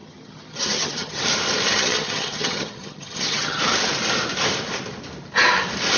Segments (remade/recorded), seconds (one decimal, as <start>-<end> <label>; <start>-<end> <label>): 0.0-1.2 remade; 1.2-1.7 recorded; 1.7-3.6 remade; 3.6-6.0 recorded